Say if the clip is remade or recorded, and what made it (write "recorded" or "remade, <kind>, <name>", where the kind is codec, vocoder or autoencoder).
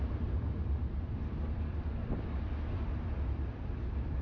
remade, vocoder, BigVGAN v2